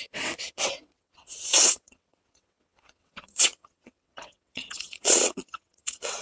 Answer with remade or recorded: remade